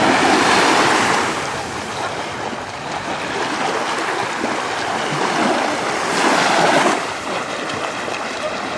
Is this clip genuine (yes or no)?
yes